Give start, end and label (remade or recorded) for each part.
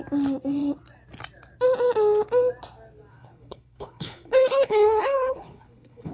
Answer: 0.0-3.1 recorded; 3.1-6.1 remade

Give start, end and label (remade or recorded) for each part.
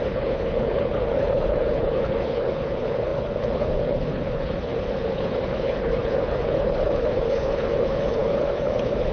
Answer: 0.0-9.1 remade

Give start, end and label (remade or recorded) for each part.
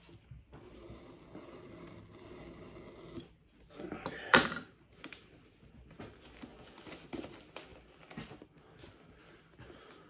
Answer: 0.0-10.1 recorded